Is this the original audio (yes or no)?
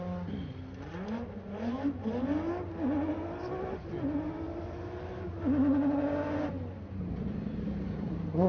yes